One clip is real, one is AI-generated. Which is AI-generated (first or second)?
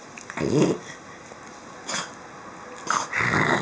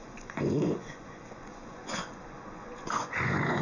second